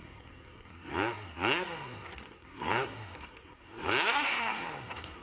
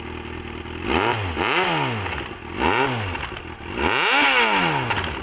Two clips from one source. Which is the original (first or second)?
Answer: second